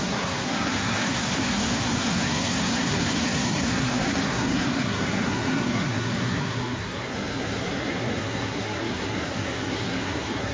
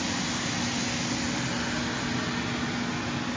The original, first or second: second